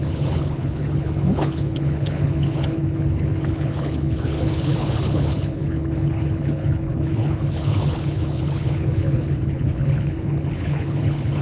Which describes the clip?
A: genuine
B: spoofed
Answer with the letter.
B